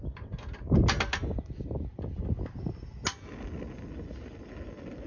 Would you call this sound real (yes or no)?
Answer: yes